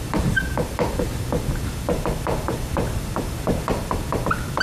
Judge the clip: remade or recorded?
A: recorded